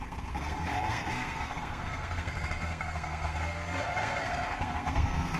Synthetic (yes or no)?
yes